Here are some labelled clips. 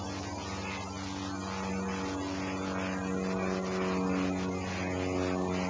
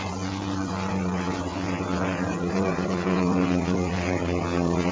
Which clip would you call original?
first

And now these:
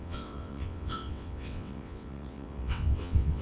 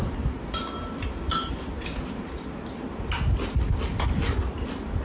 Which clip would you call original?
second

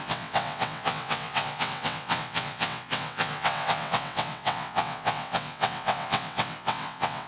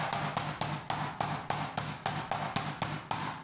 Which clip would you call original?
second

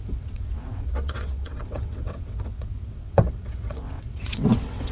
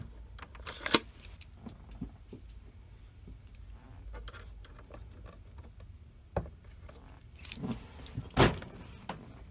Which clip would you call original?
second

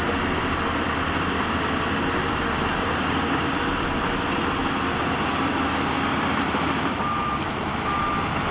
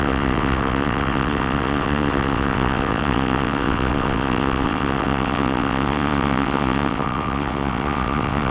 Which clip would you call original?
first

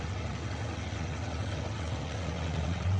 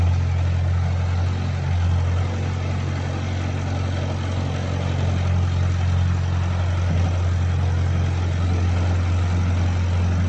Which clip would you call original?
second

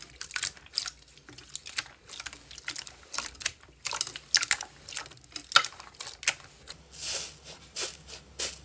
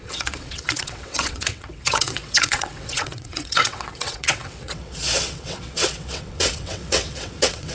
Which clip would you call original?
first